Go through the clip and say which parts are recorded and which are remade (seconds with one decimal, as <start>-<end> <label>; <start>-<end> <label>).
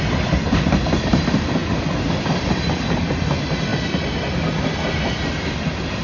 0.0-3.7 remade; 3.7-5.1 recorded; 5.1-6.0 remade